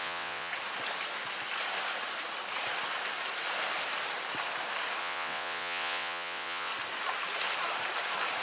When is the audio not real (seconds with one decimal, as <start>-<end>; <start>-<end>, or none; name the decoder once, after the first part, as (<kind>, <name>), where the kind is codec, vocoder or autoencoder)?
0.0-0.5 (vocoder, WaveNeXt); 5.0-6.7